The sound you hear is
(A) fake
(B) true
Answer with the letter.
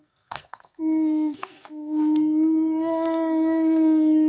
A